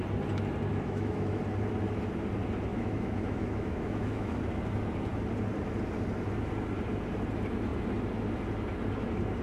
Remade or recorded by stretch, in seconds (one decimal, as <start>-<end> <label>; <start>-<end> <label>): 0.0-0.7 recorded; 0.7-1.4 remade; 1.4-2.7 recorded; 2.7-4.4 remade; 4.4-9.4 recorded